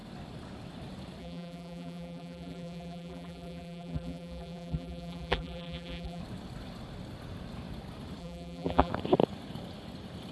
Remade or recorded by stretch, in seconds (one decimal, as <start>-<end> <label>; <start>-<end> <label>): 0.0-1.2 recorded; 1.2-6.2 remade; 6.2-8.2 recorded; 8.2-8.9 remade; 8.9-10.3 recorded